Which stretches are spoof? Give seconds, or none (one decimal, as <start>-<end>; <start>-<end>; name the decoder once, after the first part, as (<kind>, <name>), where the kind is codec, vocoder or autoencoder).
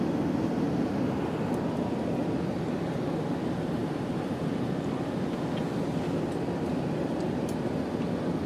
3.8-4.6 (vocoder, BigVGAN v2)